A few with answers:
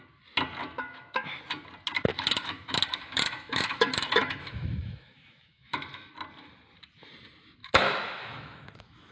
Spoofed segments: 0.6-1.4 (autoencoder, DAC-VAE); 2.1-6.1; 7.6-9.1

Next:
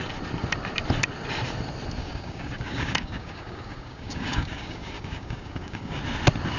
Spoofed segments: 2.0-6.0 (codec, DAC)

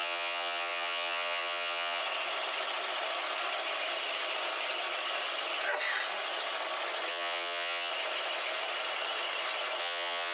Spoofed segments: 0.0-2.0 (vocoder, HiFi-GAN); 7.1-7.9; 9.8-10.3

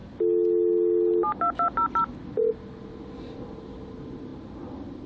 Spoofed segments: none

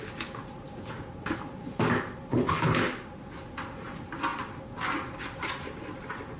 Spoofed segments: 2.3-2.8 (codec, HILCodec)

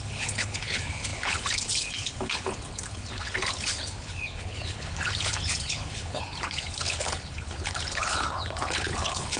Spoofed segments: 0.0-9.4 (codec, HILCodec)